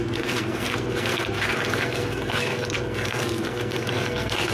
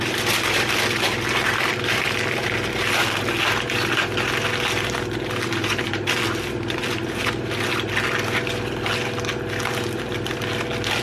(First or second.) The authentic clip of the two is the second